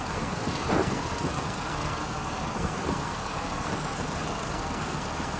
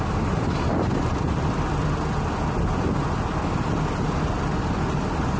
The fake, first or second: first